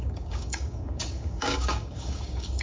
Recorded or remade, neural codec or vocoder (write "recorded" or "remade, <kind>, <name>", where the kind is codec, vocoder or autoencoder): remade, codec, DAC